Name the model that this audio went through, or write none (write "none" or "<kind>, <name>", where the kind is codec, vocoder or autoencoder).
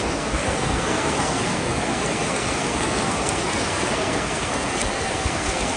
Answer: codec, SNAC